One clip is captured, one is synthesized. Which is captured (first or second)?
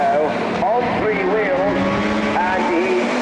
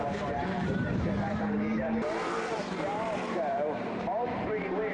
first